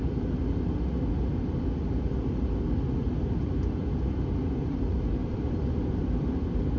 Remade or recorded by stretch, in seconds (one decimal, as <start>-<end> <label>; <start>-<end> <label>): 0.0-5.2 recorded; 5.2-6.3 remade; 6.3-6.8 recorded